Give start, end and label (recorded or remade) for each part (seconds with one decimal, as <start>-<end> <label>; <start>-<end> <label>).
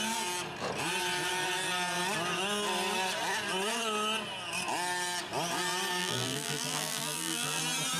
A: 0.0-6.0 recorded; 6.0-7.6 remade; 7.6-8.0 recorded